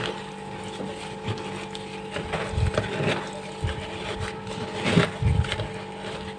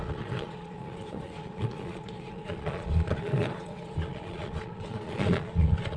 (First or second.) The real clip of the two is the first